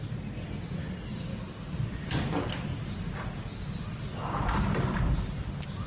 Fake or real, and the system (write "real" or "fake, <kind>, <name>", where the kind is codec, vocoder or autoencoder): real